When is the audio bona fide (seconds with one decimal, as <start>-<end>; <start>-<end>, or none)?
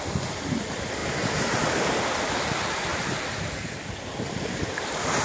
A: 0.0-1.0; 2.4-5.2